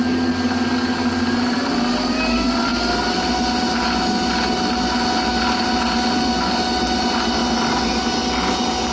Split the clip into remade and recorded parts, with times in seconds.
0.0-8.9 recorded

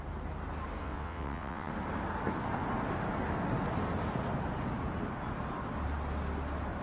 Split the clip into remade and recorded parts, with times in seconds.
0.0-0.8 recorded; 0.8-1.7 remade; 1.7-6.8 recorded

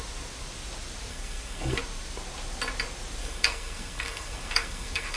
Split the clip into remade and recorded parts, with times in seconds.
0.0-1.1 recorded; 1.1-1.8 remade; 1.8-3.2 recorded; 3.2-5.2 remade